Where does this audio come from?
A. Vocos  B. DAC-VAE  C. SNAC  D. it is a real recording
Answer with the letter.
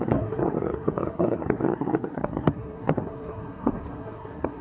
C